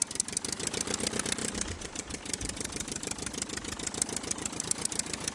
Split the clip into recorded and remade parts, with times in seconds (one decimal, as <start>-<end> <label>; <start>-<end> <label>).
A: 0.0-1.4 recorded; 1.4-4.6 remade; 4.6-5.3 recorded